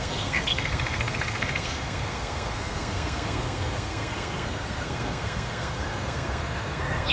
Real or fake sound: fake